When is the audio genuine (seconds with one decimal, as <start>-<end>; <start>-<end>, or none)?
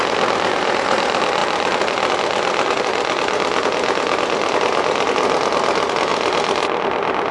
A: 0.0-7.3